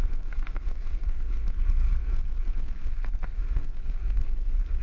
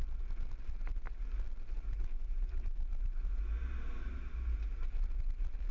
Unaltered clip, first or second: second